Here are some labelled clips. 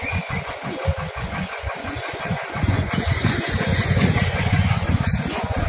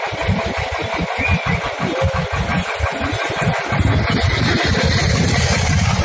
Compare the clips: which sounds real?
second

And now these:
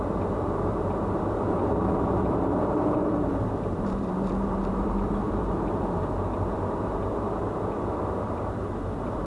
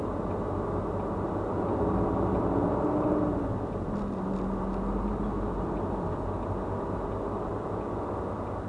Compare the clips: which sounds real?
second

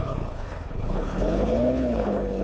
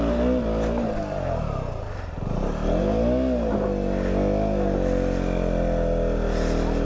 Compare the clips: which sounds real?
second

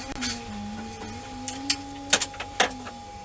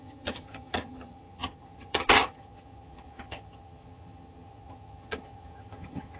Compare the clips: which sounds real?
first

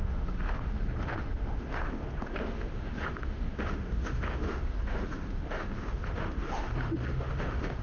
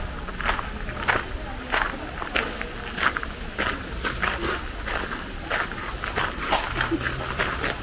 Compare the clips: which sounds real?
second